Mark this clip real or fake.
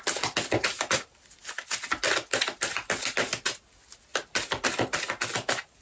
real